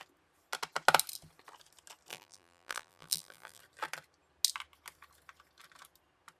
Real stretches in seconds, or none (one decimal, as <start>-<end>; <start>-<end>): 0.0-2.1; 3.6-6.4